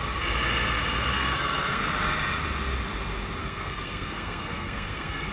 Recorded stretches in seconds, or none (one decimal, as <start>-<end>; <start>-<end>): 0.0-1.1; 1.8-3.4